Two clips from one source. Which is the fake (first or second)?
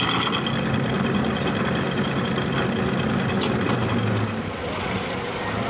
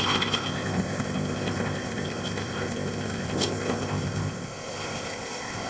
second